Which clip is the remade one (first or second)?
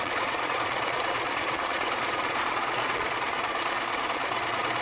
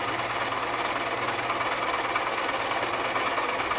first